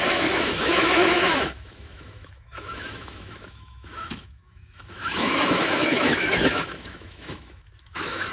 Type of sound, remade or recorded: remade